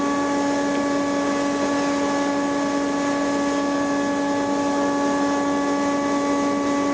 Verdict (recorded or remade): recorded